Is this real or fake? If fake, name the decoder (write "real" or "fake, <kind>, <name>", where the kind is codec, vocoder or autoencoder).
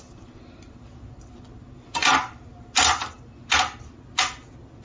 real